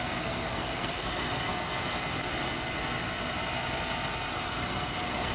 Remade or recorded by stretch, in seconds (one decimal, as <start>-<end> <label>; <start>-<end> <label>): 0.0-1.5 remade; 1.5-4.4 recorded; 4.4-5.3 remade